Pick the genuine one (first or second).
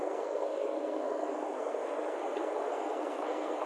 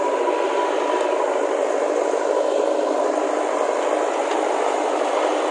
second